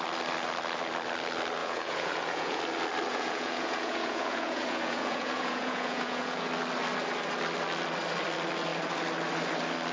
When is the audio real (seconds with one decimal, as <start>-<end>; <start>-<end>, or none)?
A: 0.0-1.6; 2.6-3.1; 6.5-9.9